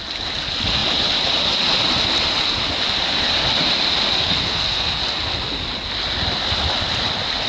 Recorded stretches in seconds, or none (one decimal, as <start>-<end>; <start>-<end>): 0.0-4.2; 5.0-7.5